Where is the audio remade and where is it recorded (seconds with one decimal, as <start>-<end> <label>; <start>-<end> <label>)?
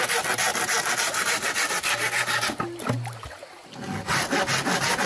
0.0-5.1 recorded